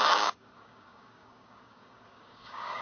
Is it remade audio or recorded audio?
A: remade